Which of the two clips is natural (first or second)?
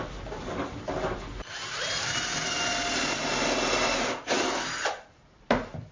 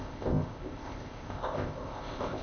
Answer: first